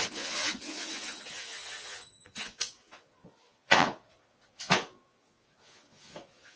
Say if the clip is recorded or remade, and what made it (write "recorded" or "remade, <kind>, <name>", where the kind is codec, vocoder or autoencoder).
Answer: remade, vocoder, Vocos